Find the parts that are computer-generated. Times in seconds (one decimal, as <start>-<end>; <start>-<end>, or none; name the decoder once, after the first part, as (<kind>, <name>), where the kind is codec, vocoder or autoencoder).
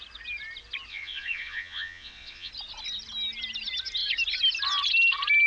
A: 0.9-2.5 (vocoder, Vocos)